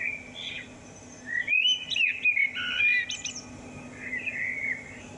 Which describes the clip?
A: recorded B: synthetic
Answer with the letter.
A